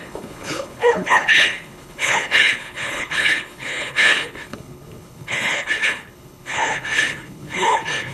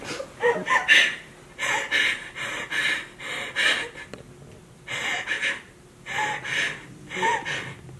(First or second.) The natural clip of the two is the second